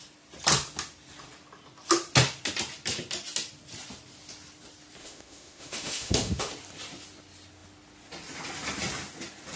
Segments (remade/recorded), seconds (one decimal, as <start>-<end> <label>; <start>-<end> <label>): 0.0-5.0 recorded; 5.0-6.5 remade; 6.5-9.6 recorded